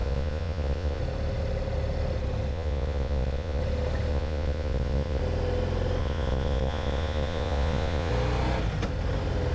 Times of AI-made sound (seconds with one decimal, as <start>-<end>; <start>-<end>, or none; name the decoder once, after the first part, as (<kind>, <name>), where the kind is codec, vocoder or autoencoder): 0.0-1.0 (vocoder, Vocos); 2.5-3.6; 4.1-5.2; 6.0-8.1